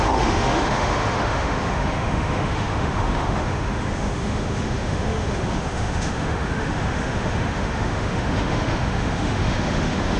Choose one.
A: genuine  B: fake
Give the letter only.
B